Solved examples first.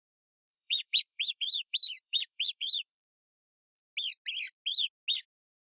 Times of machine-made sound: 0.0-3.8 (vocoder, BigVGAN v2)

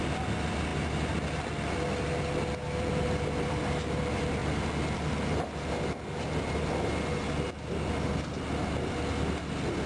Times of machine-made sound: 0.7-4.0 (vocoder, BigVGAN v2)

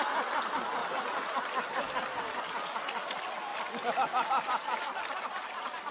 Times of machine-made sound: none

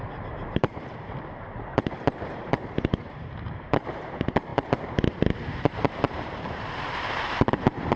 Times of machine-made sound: 0.0-8.0 (vocoder, BigVGAN v2)

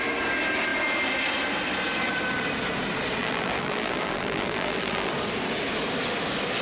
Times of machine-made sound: 3.2-5.1 (vocoder, BigVGAN v2)